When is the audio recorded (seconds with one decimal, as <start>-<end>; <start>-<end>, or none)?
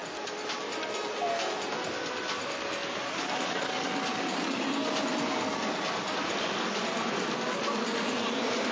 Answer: 0.0-8.7